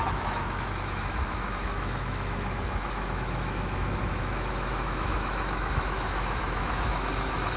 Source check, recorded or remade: remade